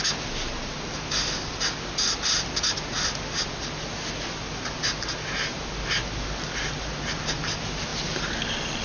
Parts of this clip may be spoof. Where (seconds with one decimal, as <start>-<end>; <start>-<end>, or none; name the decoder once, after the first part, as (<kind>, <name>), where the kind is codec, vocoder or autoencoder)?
none